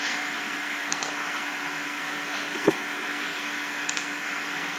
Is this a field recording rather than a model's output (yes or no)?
no